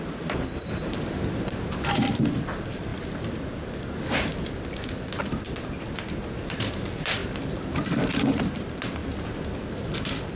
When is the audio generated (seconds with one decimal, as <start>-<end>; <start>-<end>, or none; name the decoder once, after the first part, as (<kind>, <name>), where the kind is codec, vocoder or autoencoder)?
0.0-2.9 (vocoder, BigVGAN v2); 6.7-9.0

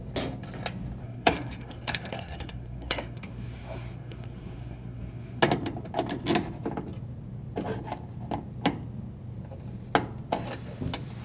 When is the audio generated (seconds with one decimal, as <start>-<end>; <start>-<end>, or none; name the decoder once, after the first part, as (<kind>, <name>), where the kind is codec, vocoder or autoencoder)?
1.0-5.4 (codec, SNAC)

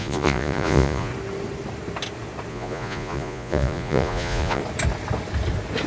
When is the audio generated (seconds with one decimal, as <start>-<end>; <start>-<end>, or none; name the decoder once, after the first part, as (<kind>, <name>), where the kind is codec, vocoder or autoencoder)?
0.0-1.1 (vocoder, Vocos); 2.5-4.6

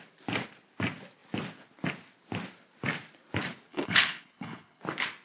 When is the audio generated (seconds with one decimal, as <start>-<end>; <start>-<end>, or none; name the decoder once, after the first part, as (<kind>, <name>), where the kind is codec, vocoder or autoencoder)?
3.7-4.8 (codec, HILCodec)

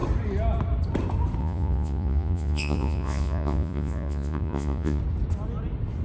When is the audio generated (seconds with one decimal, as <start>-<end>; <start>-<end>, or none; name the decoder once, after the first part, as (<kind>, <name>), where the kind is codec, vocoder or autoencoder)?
1.4-5.0 (vocoder, Vocos)